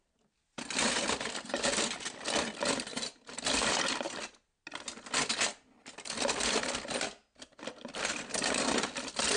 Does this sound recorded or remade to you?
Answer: recorded